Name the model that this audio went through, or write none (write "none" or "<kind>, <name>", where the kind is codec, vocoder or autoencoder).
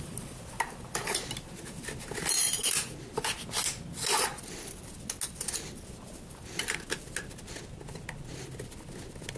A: none